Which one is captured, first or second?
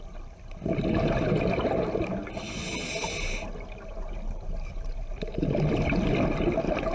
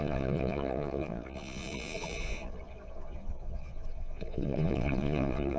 first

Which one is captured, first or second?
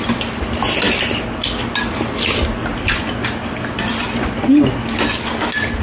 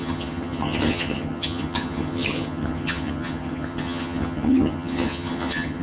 first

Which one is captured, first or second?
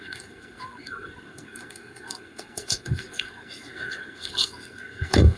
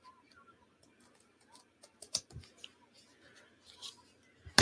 second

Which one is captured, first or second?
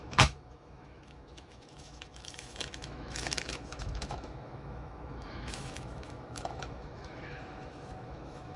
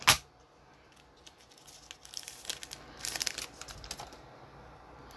second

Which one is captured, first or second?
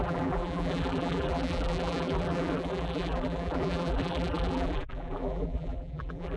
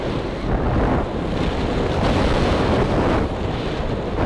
second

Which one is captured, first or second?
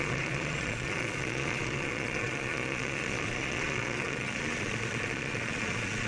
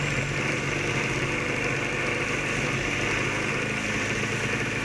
second